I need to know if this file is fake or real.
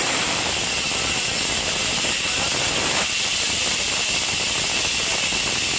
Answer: real